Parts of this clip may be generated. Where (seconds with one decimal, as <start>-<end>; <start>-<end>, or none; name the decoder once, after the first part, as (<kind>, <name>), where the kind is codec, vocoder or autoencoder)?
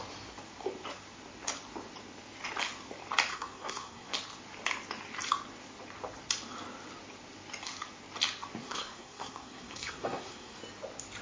3.3-4.1 (codec, SNAC); 8.6-10.6